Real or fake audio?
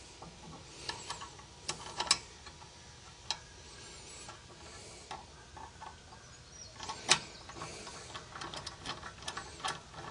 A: real